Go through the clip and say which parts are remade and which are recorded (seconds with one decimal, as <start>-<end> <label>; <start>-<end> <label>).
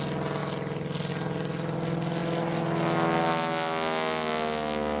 0.0-5.0 recorded